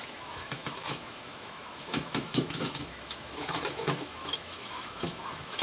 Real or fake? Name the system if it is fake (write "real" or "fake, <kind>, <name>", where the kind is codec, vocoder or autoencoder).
fake, autoencoder, DAC-VAE